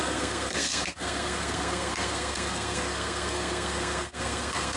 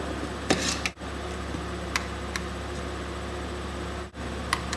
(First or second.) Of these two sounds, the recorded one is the second